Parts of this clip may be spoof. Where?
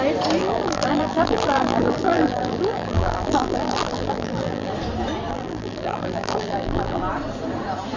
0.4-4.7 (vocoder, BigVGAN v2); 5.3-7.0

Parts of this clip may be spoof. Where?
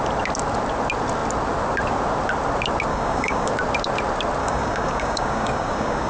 2.9-3.5 (codec, DAC); 4.4-6.1